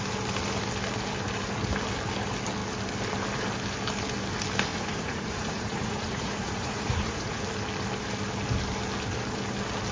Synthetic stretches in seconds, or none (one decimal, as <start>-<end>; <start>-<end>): 4.7-7.4